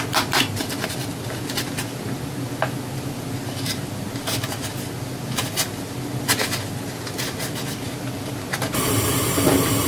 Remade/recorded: recorded